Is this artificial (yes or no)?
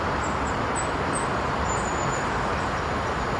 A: no